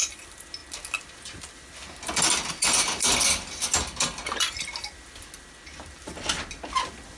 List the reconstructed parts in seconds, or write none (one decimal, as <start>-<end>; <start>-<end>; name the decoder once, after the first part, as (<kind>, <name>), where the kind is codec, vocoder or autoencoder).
none